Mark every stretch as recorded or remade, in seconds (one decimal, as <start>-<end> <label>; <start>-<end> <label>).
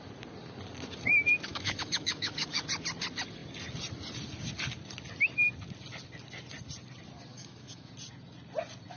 0.0-1.5 recorded; 1.5-2.6 remade; 2.6-7.3 recorded; 7.3-7.9 remade; 7.9-9.0 recorded